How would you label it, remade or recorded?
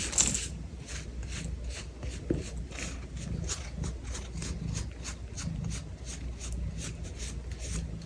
recorded